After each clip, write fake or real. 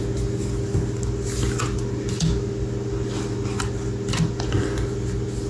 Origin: real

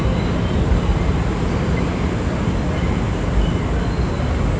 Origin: real